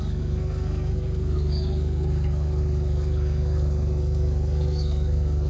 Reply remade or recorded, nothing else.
remade